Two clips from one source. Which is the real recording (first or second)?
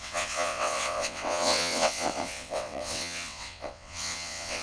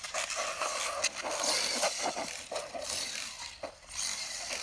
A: second